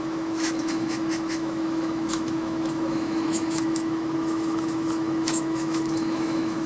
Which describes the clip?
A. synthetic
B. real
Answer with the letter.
A